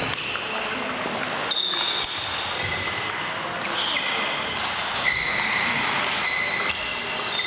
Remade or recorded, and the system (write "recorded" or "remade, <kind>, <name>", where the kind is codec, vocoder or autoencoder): recorded